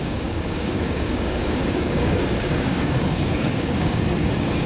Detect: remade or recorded remade